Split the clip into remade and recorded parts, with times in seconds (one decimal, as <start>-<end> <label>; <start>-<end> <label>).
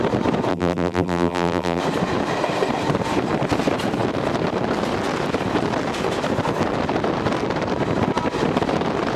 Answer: 0.0-0.5 recorded; 0.5-1.8 remade; 1.8-9.2 recorded